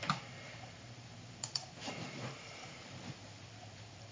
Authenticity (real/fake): fake